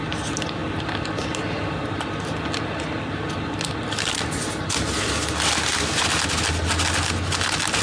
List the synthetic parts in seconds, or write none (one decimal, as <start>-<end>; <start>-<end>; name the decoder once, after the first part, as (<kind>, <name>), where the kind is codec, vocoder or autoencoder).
none